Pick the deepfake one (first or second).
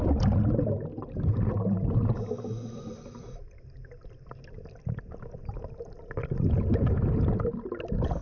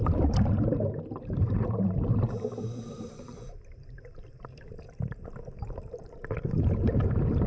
second